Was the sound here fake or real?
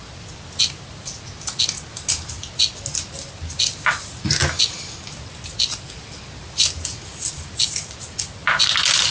real